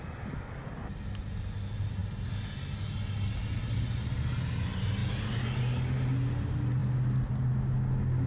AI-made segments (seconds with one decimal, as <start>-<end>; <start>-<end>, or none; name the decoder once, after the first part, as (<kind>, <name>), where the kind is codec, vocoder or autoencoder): none